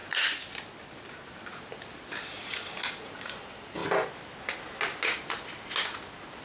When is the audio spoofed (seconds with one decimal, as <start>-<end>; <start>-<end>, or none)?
3.0-3.8